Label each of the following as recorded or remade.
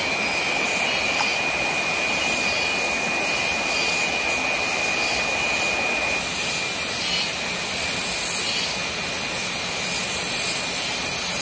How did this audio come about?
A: recorded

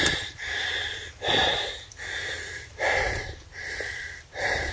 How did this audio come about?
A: recorded